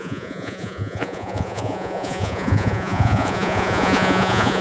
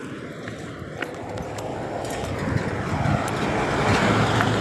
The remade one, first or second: first